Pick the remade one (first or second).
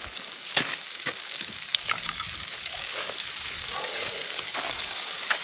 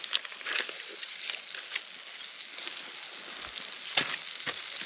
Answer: first